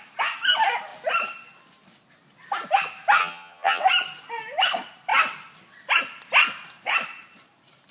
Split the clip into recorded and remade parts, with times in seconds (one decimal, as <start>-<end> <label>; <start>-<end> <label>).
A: 0.0-3.2 recorded; 3.2-3.8 remade; 3.8-7.9 recorded